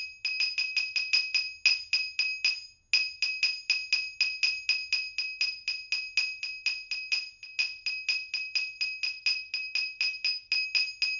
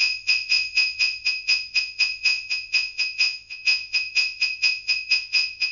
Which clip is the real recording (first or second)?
first